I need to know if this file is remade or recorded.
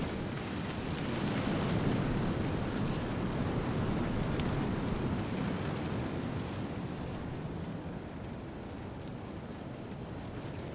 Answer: recorded